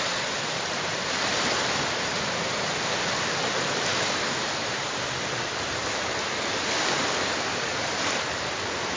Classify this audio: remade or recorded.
remade